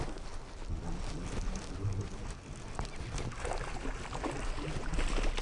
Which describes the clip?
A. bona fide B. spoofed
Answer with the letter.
A